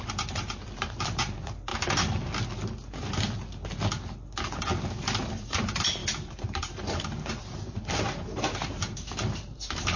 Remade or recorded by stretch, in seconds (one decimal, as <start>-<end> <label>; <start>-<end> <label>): 0.0-1.7 remade; 1.7-5.3 recorded; 5.3-10.0 remade